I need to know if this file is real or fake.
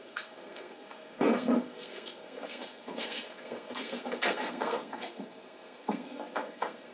fake